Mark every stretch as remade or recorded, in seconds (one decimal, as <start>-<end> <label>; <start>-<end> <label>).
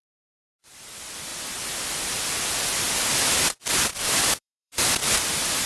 0.0-1.3 remade; 1.3-2.1 recorded; 2.1-5.7 remade